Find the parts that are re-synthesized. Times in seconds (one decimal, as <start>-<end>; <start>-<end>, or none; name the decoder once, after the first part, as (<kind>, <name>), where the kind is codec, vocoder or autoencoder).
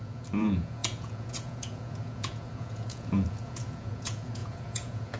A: 0.0-5.2 (vocoder, Vocos)